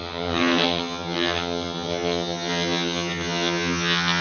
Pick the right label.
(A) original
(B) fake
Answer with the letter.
B